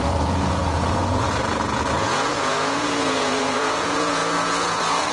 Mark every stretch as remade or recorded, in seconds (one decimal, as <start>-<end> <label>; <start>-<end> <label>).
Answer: 0.0-5.1 remade